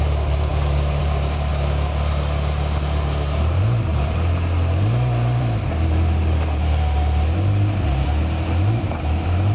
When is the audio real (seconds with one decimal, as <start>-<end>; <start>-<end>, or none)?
1.5-3.4